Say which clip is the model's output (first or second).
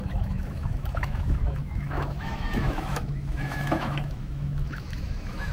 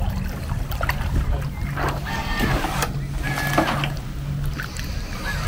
first